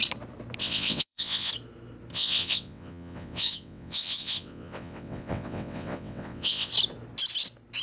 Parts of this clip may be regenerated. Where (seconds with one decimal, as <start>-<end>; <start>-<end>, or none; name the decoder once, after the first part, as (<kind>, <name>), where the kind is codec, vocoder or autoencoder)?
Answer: 0.6-1.5 (vocoder, WaveNeXt); 2.1-6.7